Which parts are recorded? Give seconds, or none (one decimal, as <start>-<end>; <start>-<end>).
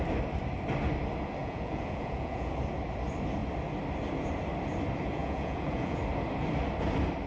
0.0-1.4; 2.5-5.2; 6.0-7.3